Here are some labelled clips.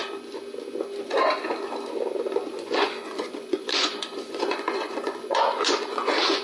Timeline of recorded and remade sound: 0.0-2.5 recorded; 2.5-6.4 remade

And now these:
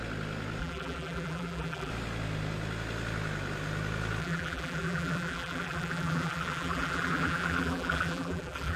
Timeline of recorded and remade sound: 0.0-0.6 recorded; 0.6-1.9 remade; 1.9-4.2 recorded; 4.2-8.8 remade

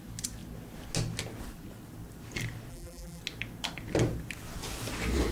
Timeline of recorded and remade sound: 0.0-2.7 recorded; 2.7-3.2 remade; 3.2-5.3 recorded

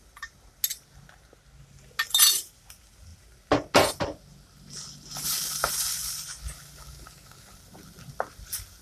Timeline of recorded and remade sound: 0.0-8.8 recorded

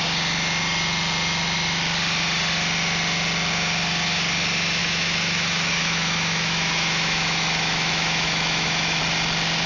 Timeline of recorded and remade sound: 0.0-4.8 recorded; 4.8-9.0 remade; 9.0-9.7 recorded

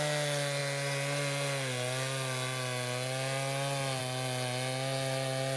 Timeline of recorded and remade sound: 0.0-5.6 recorded